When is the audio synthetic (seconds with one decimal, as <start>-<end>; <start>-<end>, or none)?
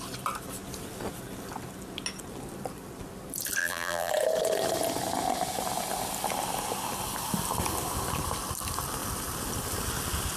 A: 3.6-4.1